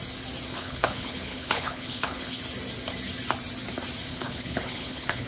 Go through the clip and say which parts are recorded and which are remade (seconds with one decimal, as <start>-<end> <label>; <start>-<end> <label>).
0.0-0.5 recorded; 0.5-2.4 remade; 2.4-4.1 recorded; 4.1-5.3 remade